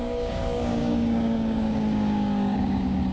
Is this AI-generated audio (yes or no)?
yes